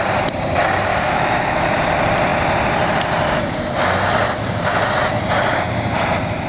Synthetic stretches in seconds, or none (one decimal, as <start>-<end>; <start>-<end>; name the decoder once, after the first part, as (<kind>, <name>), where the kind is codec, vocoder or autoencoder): 0.9-1.8 (autoencoder, DAC-VAE)